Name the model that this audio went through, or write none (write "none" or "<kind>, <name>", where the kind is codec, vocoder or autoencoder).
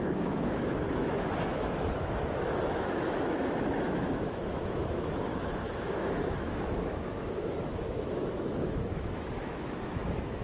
autoencoder, DAC-VAE